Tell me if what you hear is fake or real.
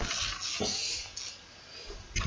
real